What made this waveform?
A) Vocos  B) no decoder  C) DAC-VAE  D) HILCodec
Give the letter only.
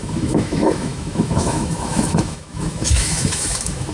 C